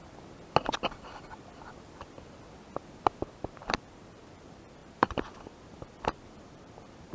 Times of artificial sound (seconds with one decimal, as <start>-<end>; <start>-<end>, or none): 4.8-7.1